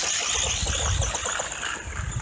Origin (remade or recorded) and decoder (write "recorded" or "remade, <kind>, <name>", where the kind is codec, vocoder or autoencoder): recorded